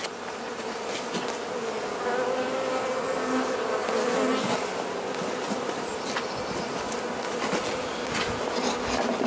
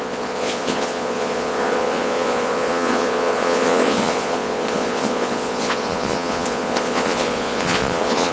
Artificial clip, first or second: second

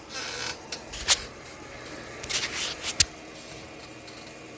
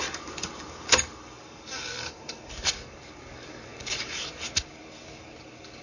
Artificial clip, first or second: second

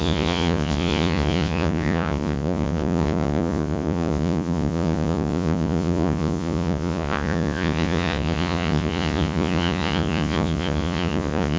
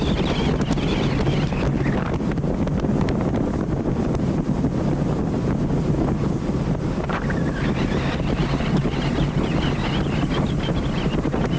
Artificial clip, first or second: first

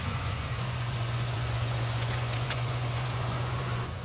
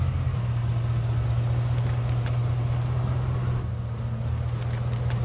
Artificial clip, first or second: first